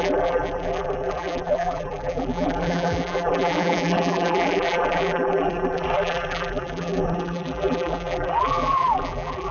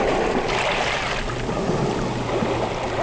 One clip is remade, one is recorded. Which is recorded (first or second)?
second